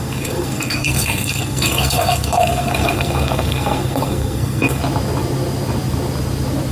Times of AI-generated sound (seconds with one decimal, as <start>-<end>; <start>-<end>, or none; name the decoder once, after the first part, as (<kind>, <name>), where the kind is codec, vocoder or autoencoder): 0.0-4.8 (codec, SNAC)